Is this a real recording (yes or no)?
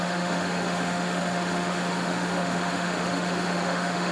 no